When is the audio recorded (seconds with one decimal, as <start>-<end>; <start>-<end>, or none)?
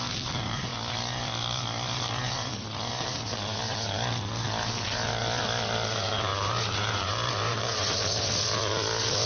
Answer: 0.0-6.3; 8.3-9.3